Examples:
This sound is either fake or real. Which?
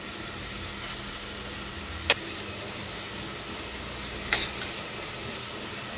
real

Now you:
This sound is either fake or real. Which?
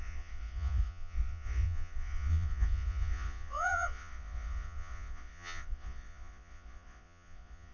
fake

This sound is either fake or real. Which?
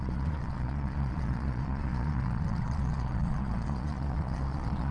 fake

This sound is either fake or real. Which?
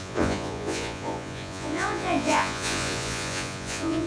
fake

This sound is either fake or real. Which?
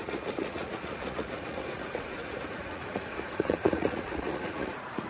fake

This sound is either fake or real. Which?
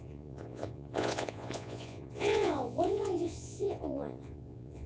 fake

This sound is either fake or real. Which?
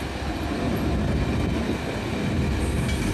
real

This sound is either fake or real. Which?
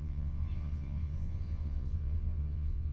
fake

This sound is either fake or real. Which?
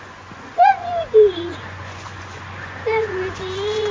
fake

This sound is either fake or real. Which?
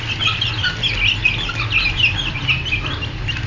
real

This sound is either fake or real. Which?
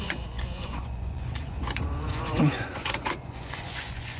fake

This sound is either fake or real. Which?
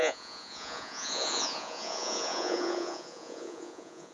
fake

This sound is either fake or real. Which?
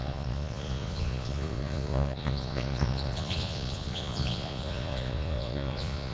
fake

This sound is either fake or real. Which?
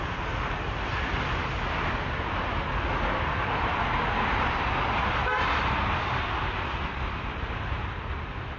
real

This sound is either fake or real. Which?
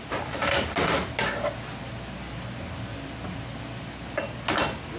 real